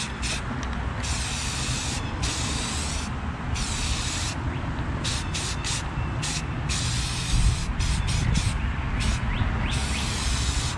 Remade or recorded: recorded